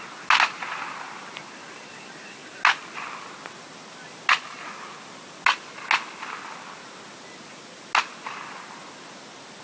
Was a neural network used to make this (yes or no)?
no